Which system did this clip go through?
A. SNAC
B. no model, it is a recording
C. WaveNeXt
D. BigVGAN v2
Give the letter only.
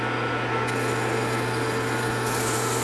B